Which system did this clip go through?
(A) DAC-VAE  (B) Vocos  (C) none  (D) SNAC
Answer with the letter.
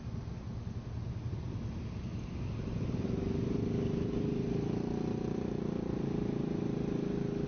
C